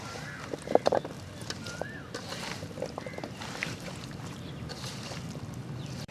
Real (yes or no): no